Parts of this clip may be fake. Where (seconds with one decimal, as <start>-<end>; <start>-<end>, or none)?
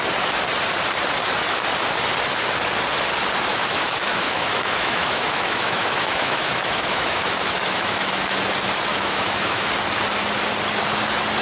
3.5-8.4; 8.9-9.7